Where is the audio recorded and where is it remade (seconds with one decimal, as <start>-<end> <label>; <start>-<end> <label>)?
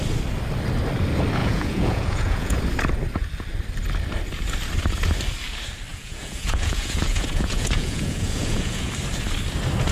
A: 0.0-1.4 recorded; 1.4-2.6 remade; 2.6-5.9 recorded; 5.9-8.9 remade; 8.9-9.9 recorded